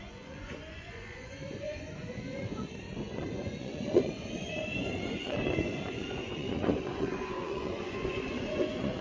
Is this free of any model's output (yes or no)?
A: no